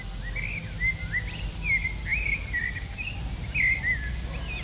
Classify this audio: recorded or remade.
recorded